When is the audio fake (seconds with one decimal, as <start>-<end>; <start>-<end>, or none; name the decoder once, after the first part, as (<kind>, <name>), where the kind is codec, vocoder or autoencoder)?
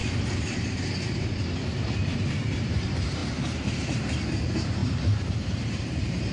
2.0-6.3 (vocoder, BigVGAN v2)